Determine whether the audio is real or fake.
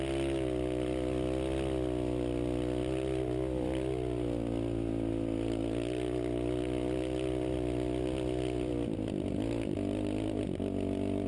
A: real